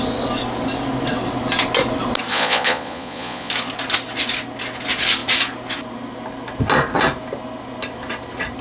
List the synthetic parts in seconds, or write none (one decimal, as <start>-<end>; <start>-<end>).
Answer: 2.3-3.5